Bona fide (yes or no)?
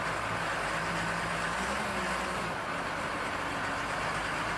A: yes